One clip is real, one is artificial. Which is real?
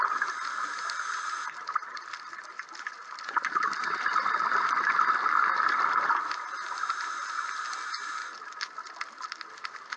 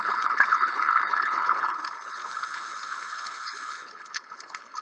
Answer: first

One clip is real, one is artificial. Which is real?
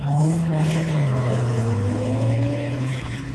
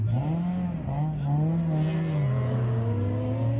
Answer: second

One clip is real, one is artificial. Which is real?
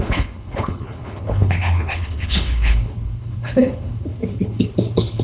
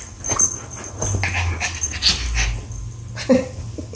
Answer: second